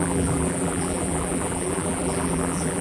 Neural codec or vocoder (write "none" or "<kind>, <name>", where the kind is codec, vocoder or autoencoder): vocoder, BigVGAN v2